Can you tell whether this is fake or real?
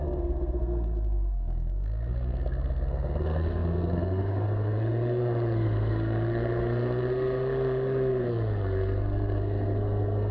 fake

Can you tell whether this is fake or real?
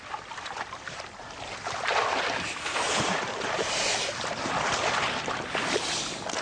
real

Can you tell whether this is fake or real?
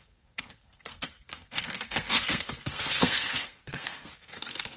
fake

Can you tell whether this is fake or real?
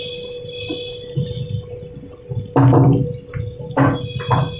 real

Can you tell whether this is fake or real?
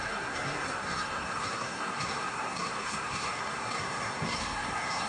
fake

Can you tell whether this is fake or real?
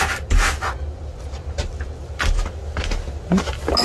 real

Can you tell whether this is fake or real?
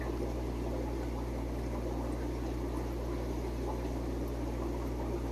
real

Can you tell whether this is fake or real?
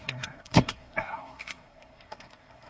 fake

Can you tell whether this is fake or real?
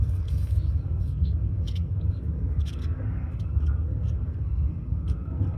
fake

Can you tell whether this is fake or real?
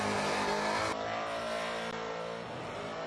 real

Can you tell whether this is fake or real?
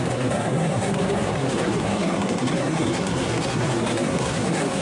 fake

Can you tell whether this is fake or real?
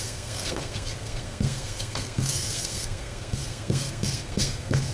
fake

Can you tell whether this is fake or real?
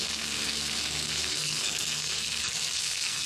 fake